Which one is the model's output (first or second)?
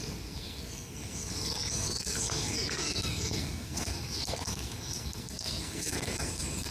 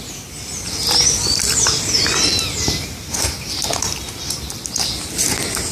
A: first